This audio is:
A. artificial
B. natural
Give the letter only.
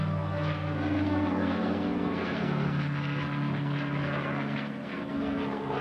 A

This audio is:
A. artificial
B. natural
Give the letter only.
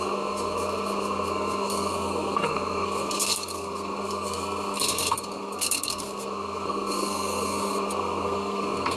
A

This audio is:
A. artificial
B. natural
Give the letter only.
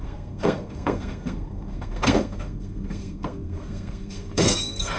A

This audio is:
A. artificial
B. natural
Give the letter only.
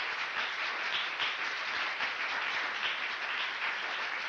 B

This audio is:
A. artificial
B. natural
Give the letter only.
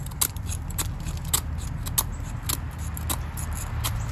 B